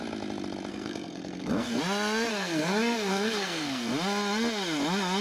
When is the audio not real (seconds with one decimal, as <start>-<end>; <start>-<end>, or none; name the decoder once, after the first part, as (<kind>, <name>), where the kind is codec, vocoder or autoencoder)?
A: 0.7-1.8 (codec, SNAC); 2.3-3.9